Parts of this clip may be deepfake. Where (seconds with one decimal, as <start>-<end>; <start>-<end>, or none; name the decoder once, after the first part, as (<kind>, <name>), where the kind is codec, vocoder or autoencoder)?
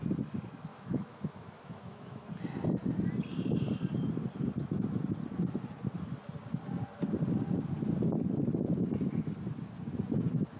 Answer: 0.7-2.3 (autoencoder, DAC-VAE)